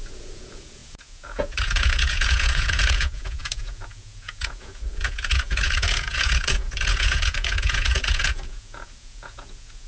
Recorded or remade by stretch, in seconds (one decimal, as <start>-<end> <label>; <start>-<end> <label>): 0.0-9.9 remade